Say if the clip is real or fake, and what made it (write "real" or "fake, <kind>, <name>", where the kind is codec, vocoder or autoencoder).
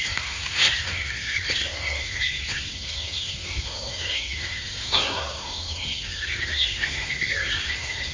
fake, codec, SNAC